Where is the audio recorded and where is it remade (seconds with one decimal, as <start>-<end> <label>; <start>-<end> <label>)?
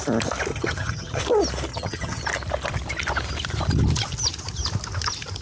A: 0.0-0.5 recorded; 0.5-1.2 remade; 1.2-1.7 recorded; 1.7-2.2 remade; 2.2-5.4 recorded